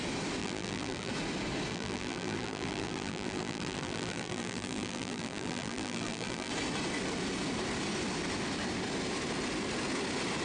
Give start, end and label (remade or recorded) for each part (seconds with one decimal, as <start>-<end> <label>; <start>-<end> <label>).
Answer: 0.0-0.4 recorded; 0.4-1.1 remade; 1.1-1.7 recorded; 1.7-6.5 remade; 6.5-10.4 recorded